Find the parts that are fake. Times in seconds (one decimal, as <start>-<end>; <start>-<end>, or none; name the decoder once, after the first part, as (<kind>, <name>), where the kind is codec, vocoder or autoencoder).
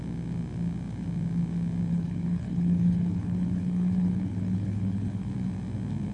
1.9-5.3 (codec, HILCodec)